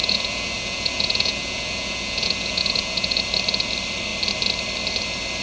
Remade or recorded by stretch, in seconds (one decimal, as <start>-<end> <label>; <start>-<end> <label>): 0.0-3.2 remade; 3.2-5.4 recorded